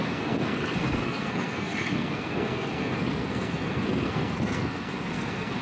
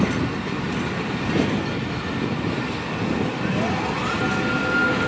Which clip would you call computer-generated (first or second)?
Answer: first